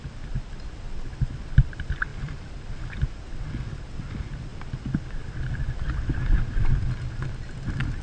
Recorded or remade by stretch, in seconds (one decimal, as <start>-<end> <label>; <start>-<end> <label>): 0.0-8.0 recorded